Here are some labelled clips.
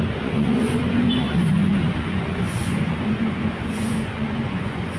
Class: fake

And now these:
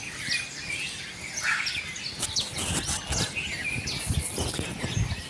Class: real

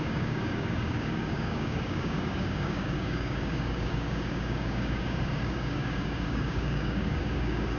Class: fake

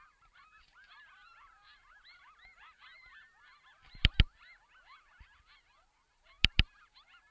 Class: fake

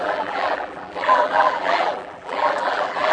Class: fake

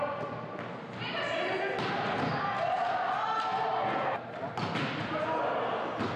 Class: real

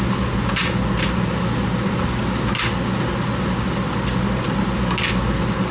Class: real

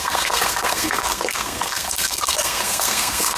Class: fake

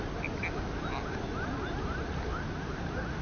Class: real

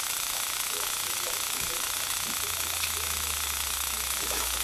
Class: fake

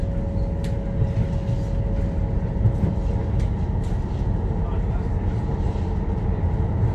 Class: real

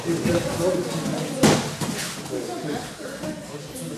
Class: real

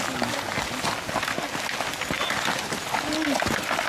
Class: real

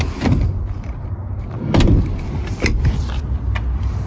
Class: real